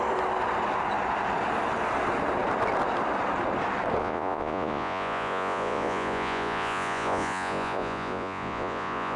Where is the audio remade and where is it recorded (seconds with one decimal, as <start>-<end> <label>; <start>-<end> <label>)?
0.0-4.0 recorded; 4.0-9.2 remade